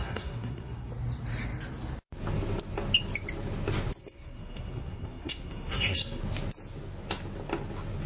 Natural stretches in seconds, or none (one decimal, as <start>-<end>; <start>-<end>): 0.9-4.0; 6.2-8.1